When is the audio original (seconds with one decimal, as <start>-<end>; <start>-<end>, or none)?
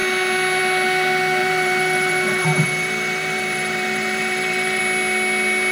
0.0-1.4; 4.8-5.7